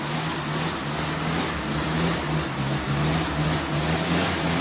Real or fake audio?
real